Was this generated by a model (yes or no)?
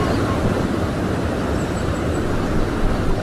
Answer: no